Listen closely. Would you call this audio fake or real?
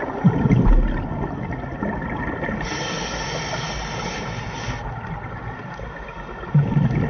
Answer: real